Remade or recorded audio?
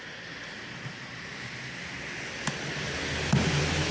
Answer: recorded